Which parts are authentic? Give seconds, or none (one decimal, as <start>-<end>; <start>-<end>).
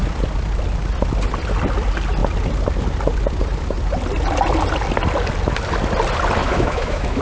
0.0-6.4